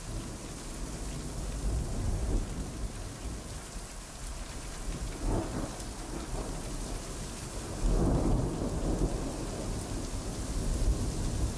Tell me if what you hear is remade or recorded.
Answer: recorded